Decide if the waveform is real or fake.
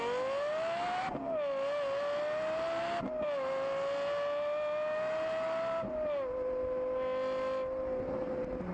real